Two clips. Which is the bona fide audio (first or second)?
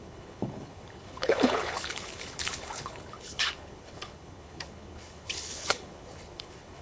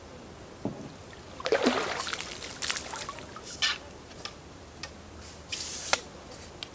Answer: second